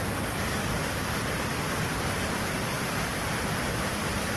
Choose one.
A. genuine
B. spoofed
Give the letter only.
A